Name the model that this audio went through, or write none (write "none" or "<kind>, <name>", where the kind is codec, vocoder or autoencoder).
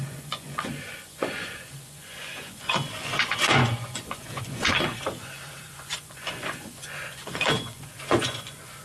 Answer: vocoder, Vocos